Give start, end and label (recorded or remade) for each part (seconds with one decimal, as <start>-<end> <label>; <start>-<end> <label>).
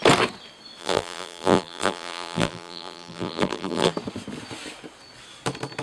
0.0-0.8 recorded; 0.8-3.9 remade; 3.9-5.8 recorded